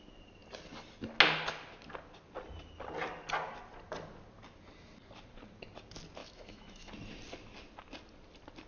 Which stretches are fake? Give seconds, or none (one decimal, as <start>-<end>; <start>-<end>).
6.2-6.9